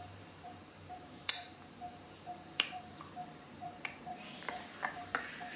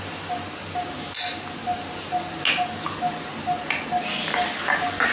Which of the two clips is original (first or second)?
second